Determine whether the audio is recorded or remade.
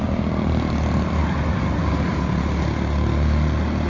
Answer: recorded